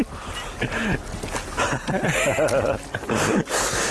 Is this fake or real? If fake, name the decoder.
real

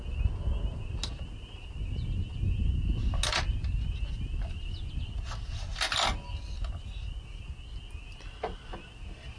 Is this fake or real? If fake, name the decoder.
real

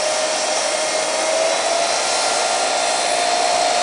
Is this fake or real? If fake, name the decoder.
real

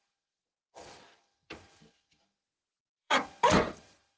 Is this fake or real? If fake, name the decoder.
fake, vocoder, BigVGAN v2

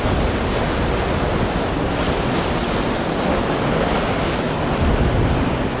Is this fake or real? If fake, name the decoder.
real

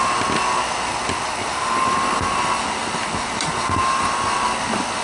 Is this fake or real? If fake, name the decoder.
real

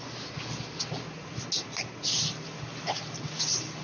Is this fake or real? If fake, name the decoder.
real